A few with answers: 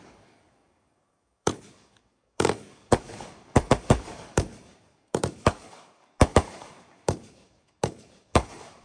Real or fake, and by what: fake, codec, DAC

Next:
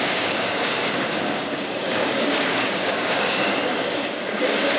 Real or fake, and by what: fake, codec, DAC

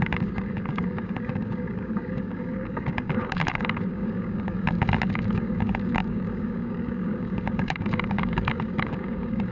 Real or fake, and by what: fake, codec, DAC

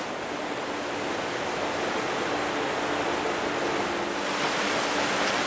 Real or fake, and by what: real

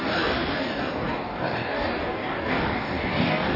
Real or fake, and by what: fake, codec, DAC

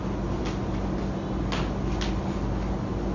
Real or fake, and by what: real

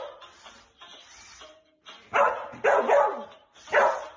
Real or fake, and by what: real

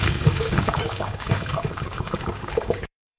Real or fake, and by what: fake, codec, DAC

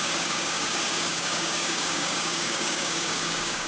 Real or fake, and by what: fake, codec, DAC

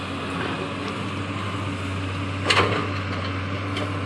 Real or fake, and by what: real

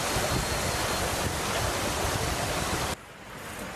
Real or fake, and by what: real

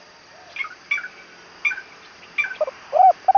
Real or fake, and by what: real